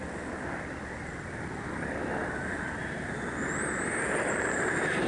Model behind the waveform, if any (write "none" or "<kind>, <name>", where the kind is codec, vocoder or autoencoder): none